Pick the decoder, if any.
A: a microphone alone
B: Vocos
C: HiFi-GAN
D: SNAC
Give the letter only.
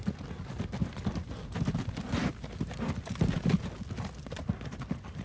A